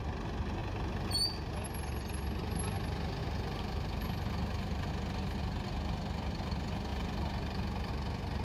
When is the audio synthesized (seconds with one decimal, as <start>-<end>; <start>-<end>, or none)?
0.6-1.5; 3.2-4.9; 6.9-7.9